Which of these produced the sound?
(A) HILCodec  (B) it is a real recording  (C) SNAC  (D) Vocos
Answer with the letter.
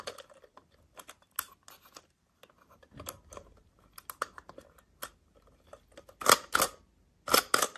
B